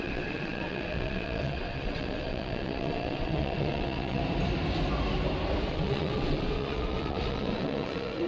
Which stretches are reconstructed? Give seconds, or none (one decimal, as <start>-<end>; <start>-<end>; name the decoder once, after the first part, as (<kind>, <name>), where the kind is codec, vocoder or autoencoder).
0.0-4.2 (vocoder, WaveNeXt); 5.7-8.3